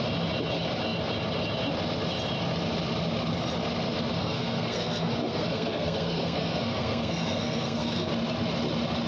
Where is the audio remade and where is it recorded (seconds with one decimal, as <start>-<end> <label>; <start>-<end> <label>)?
0.0-4.2 recorded; 4.2-8.1 remade; 8.1-9.1 recorded